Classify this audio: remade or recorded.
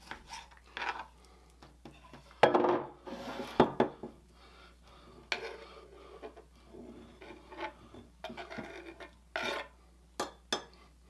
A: recorded